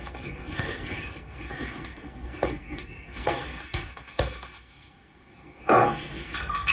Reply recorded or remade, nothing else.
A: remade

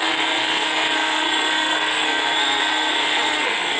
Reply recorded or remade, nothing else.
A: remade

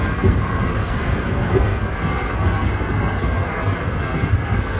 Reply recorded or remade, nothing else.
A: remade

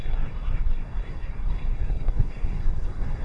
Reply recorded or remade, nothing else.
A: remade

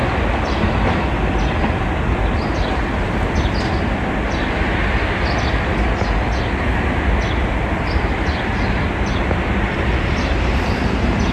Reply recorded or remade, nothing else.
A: recorded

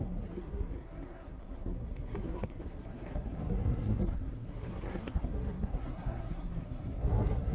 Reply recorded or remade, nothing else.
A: remade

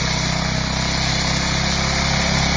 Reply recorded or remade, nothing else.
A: recorded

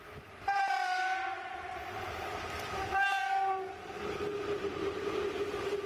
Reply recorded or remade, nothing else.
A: recorded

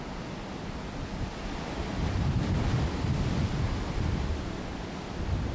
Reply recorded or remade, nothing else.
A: recorded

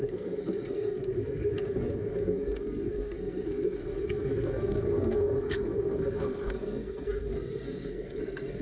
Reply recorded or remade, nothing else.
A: remade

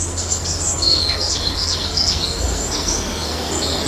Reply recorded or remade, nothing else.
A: remade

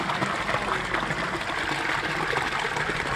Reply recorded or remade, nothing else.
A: recorded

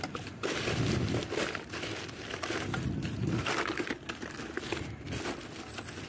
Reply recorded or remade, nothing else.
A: recorded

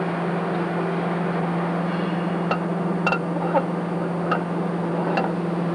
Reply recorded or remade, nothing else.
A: recorded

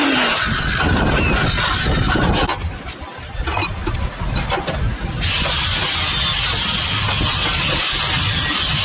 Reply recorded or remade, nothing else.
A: recorded